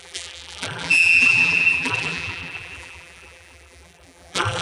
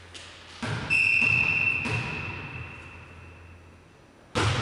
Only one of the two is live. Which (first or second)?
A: second